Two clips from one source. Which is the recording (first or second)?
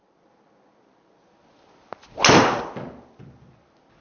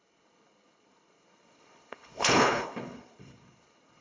first